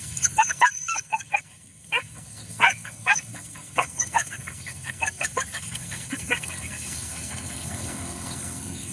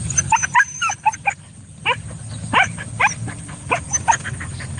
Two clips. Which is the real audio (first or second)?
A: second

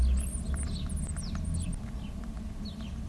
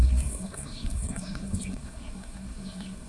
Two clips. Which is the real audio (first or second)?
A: first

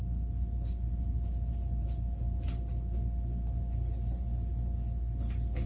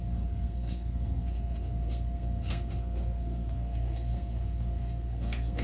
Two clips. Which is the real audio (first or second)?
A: first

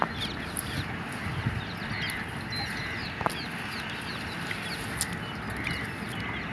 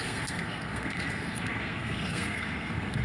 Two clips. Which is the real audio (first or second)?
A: first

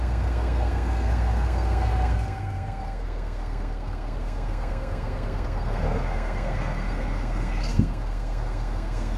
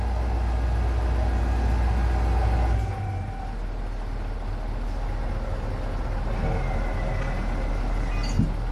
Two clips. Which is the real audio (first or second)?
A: second